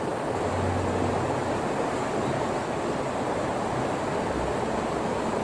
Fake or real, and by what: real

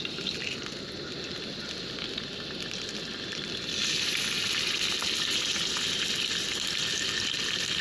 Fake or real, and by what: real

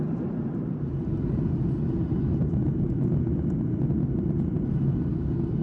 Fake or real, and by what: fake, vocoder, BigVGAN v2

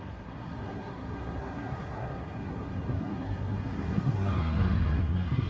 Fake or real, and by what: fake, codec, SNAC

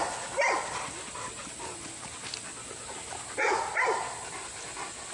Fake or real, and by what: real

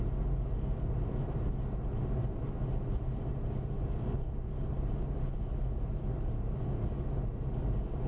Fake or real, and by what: real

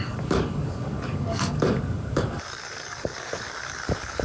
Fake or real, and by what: fake, codec, DAC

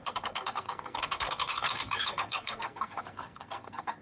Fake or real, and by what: fake, codec, SNAC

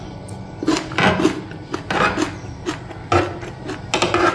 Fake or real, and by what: real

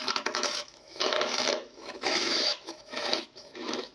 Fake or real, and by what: fake, autoencoder, DAC-VAE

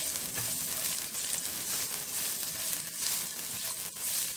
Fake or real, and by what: real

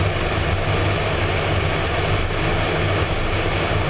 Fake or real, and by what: real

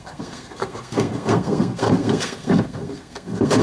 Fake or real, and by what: fake, codec, SNAC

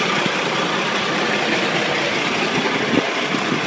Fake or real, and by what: fake, vocoder, BigVGAN v2